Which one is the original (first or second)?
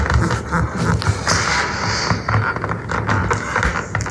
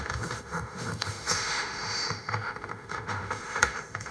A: first